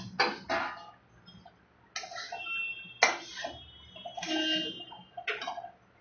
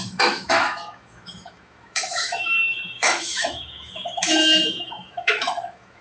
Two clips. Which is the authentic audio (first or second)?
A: first